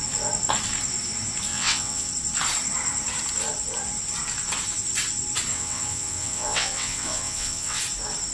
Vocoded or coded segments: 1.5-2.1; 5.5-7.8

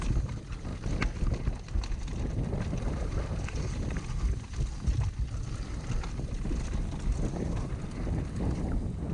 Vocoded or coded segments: none